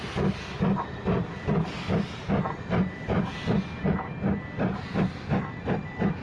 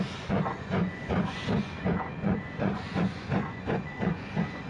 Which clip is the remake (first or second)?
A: second